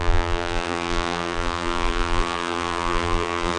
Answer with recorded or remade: remade